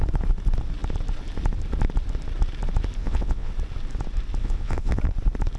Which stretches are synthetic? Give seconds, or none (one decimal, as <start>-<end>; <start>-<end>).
3.0-3.5; 4.4-5.0